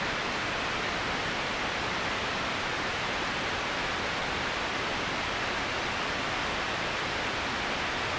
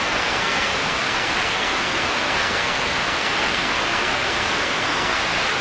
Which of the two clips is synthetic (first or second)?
second